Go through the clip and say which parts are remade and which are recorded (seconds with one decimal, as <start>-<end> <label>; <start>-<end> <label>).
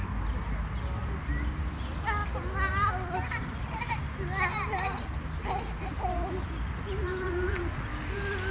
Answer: 0.0-8.5 recorded